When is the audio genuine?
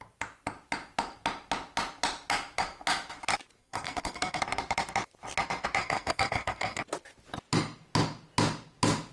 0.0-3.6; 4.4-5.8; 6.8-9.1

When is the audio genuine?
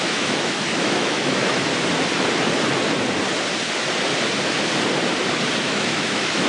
1.7-5.6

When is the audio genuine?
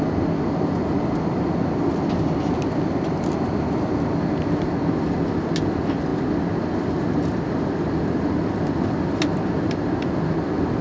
0.0-10.8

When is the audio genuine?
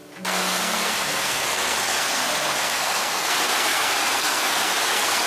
none